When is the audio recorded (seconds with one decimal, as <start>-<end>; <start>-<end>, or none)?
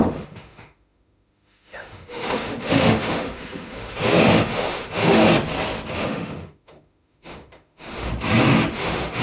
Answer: 5.2-5.9; 8.1-8.7